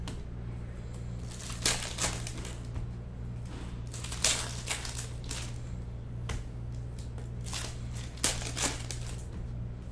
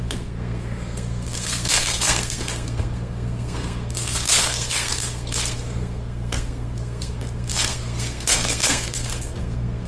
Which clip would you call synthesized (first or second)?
second